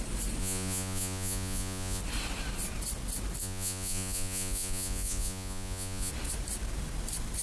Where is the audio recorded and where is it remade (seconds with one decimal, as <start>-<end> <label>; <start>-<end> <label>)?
0.0-0.4 recorded; 0.4-2.0 remade; 2.0-3.4 recorded; 3.4-6.1 remade; 6.1-7.4 recorded